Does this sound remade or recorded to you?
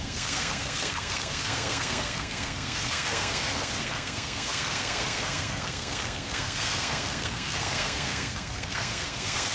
remade